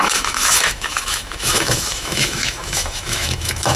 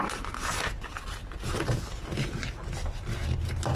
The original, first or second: second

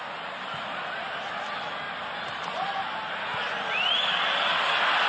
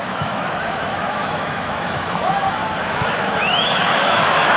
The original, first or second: first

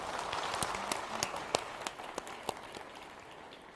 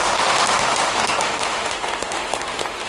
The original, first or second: first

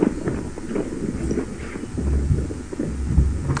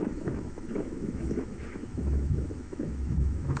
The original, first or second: first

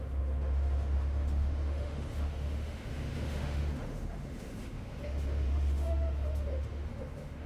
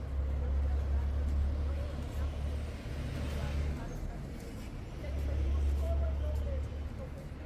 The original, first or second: second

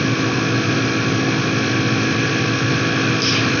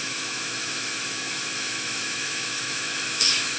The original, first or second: first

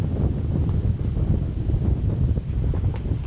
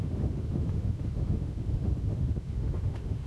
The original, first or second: first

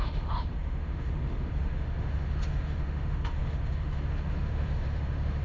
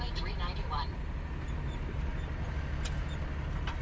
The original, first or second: second